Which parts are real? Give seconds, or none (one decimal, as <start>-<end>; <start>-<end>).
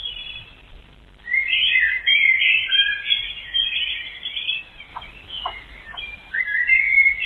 3.2-4.0